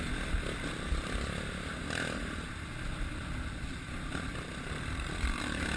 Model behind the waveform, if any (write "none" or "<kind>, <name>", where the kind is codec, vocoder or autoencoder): none